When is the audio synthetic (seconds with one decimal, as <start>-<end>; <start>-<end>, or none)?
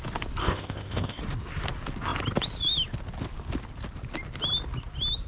0.4-1.2